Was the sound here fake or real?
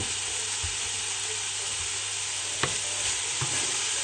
real